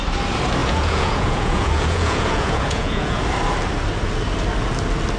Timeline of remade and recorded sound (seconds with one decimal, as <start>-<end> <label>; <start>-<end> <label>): 0.0-0.6 recorded; 0.6-3.2 remade; 3.2-5.2 recorded